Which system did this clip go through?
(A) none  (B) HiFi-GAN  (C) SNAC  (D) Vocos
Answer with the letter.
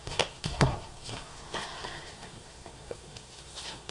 C